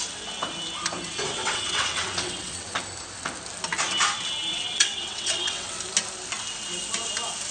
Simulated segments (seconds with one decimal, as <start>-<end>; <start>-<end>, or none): 1.4-2.8; 4.5-5.8